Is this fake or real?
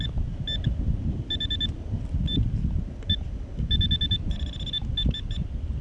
real